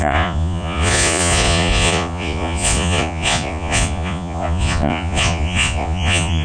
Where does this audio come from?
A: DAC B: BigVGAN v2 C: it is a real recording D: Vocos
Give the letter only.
D